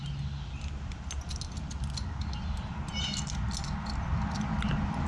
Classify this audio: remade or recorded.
recorded